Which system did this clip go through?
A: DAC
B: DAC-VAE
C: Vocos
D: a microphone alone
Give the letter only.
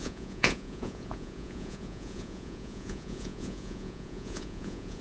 C